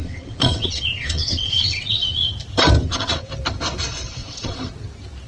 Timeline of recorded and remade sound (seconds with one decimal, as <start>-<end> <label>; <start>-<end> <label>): 0.0-2.3 remade; 2.3-2.8 recorded; 2.8-3.3 remade; 3.3-4.2 recorded; 4.2-4.7 remade; 4.7-5.3 recorded